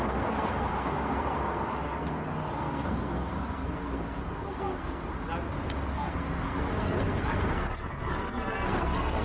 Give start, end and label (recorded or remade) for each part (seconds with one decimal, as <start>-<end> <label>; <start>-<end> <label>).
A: 0.0-5.1 remade; 5.1-5.9 recorded; 5.9-9.2 remade